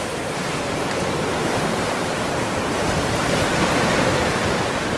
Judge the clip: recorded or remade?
remade